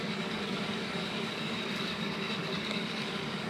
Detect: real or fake fake